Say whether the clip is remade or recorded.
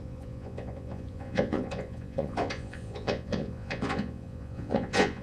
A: remade